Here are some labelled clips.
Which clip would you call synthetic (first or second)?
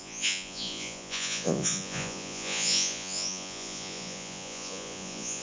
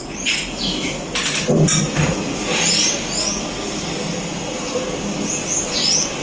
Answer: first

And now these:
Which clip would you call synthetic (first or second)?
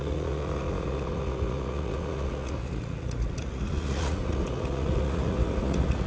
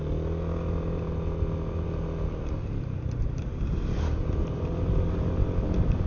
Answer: first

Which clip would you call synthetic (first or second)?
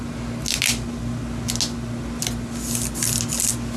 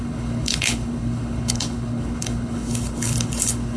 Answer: second